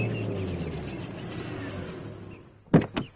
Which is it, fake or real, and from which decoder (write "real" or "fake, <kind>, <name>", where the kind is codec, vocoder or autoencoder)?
real